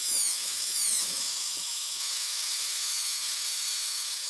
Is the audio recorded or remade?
remade